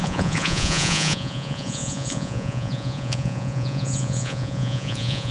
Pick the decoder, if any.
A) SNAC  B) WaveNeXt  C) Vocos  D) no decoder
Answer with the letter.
C